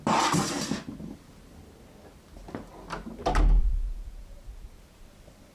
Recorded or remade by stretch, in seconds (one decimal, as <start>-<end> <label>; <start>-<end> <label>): 0.0-3.6 recorded; 3.6-4.7 remade; 4.7-5.5 recorded

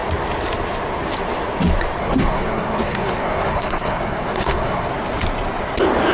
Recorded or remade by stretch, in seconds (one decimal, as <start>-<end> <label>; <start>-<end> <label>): 0.0-2.0 recorded; 2.0-4.9 remade; 4.9-6.1 recorded

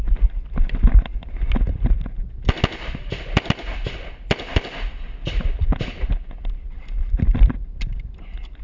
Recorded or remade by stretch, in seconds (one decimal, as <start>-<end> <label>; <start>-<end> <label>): 0.0-8.6 recorded

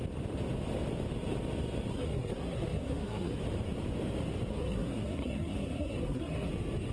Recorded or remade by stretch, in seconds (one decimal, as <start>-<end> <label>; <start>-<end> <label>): 0.0-1.9 recorded; 1.9-3.4 remade; 3.4-4.5 recorded; 4.5-6.5 remade; 6.5-6.9 recorded